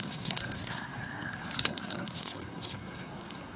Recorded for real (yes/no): no